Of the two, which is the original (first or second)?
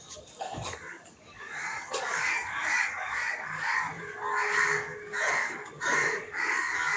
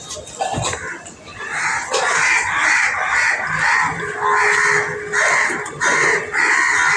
second